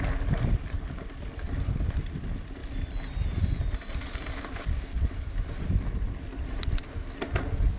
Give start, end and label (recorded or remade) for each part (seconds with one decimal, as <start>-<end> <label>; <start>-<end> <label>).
0.0-2.6 recorded; 2.6-4.8 remade; 4.8-7.8 recorded